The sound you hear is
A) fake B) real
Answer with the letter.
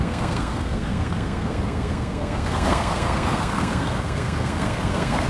A